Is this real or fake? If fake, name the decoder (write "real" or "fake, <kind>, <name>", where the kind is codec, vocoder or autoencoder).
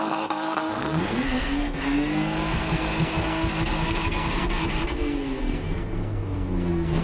fake, codec, SNAC